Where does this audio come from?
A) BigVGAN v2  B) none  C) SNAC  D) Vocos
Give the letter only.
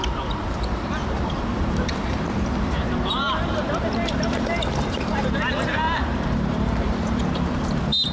A